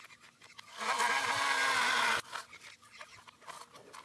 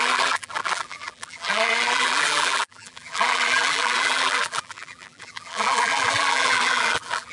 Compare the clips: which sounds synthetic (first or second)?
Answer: second